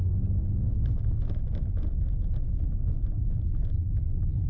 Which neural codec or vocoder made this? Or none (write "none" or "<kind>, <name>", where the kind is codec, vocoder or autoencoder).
none